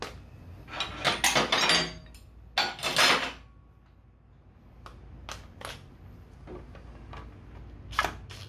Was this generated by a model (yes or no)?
no